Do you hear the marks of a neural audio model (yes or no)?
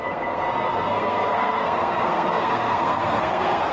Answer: yes